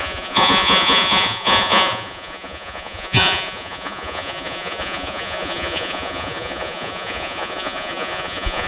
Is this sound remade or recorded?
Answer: remade